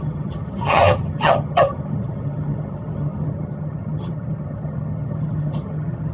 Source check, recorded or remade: remade